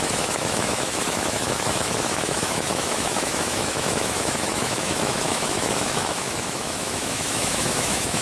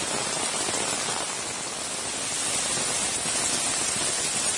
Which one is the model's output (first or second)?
first